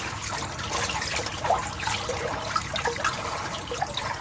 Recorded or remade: recorded